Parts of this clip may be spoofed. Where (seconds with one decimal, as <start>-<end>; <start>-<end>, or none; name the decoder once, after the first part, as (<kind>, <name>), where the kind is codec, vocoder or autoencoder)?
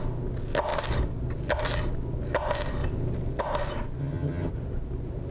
4.0-4.5 (vocoder, HiFi-GAN)